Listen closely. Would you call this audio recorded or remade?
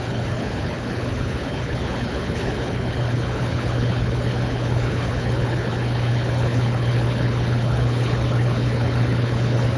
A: remade